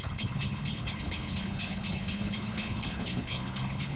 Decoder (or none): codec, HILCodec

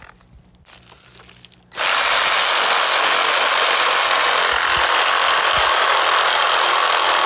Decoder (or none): none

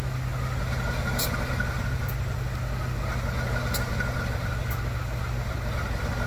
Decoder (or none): none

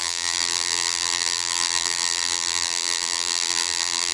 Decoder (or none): vocoder, BigVGAN v2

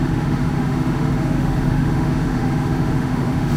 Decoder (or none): autoencoder, DAC-VAE